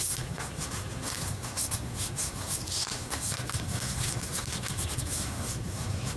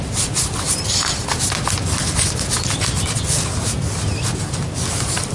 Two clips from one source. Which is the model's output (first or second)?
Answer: first